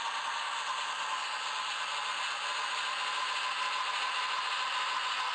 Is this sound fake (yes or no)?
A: no